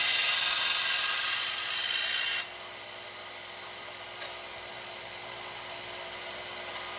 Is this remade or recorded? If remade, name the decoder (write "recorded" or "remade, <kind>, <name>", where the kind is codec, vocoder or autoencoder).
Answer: recorded